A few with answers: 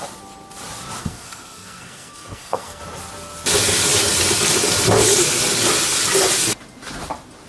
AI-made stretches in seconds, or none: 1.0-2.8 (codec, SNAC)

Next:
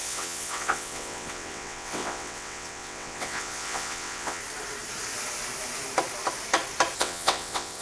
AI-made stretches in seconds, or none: 0.0-4.4 (vocoder, WaveNeXt); 7.0-7.8

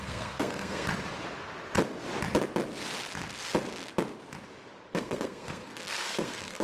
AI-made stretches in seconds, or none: 0.0-0.9 (codec, SNAC); 4.9-6.6

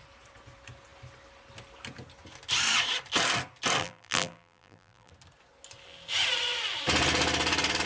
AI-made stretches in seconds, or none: 3.8-5.1 (vocoder, BigVGAN v2)

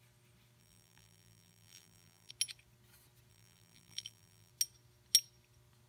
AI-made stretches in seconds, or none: 0.6-2.3 (vocoder, BigVGAN v2); 3.3-4.5

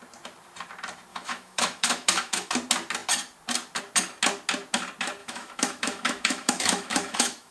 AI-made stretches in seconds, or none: 1.1-2.5 (autoencoder, DAC-VAE); 5.2-7.5

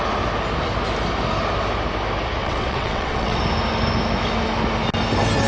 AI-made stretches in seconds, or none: 2.4-3.4 (vocoder, WaveNeXt)

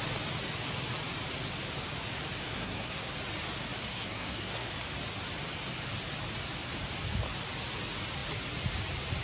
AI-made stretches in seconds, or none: 2.4-3.1 (codec, SNAC); 3.9-4.7